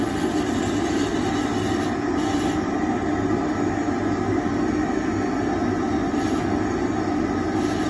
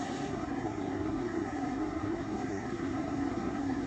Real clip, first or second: first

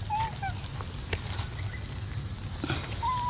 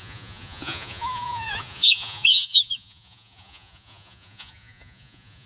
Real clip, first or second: first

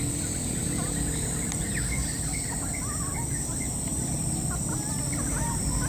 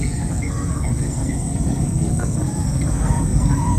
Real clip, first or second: first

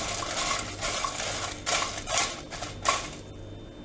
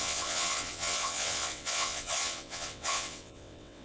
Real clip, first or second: first